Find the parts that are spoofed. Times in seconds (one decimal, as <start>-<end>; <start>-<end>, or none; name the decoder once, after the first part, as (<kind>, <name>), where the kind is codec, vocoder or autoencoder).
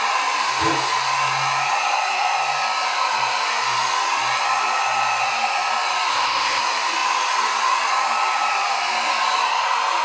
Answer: 6.1-6.6 (codec, ZipCodec)